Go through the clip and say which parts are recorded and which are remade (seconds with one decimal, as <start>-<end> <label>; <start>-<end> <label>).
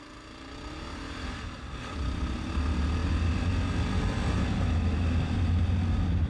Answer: 0.0-6.3 recorded